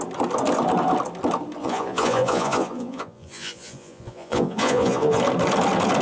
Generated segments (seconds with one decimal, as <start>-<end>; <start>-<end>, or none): 1.6-5.2